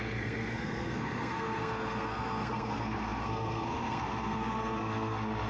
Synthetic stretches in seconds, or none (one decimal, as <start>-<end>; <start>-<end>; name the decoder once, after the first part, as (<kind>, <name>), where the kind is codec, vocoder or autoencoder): 0.0-5.5 (codec, SNAC)